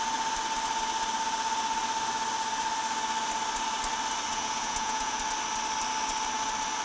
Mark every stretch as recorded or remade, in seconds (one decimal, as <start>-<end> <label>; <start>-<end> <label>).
0.0-4.3 recorded; 4.3-5.2 remade; 5.2-6.8 recorded

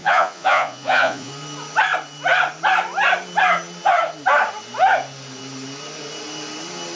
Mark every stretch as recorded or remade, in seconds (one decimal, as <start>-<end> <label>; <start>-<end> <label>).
0.0-1.3 remade; 1.3-7.0 recorded

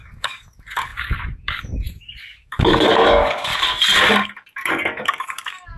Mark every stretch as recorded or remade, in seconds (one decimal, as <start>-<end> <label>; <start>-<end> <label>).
0.0-3.5 remade; 3.5-4.1 recorded; 4.1-5.8 remade

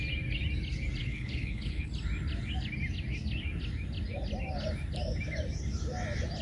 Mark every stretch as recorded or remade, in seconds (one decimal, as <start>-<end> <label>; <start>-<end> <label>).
0.0-1.0 recorded; 1.0-1.9 remade; 1.9-6.4 recorded